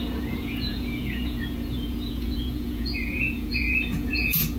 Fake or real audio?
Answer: fake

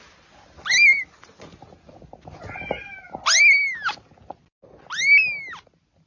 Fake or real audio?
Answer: real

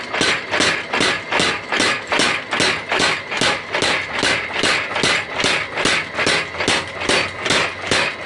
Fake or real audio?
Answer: real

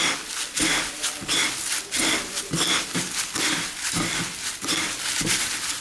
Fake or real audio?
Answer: real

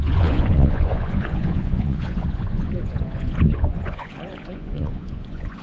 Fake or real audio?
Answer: fake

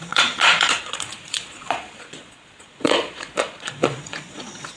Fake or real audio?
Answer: fake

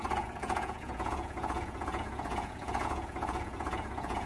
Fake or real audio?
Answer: fake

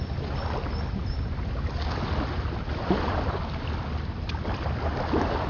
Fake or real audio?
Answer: real